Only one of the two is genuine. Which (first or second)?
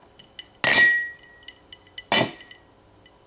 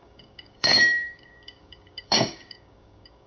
first